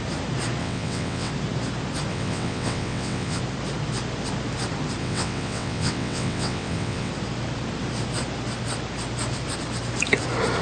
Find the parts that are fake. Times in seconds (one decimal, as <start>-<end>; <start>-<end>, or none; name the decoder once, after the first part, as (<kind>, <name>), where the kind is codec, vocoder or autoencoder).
0.6-1.3 (vocoder, WaveNeXt); 2.1-3.4; 5.0-7.1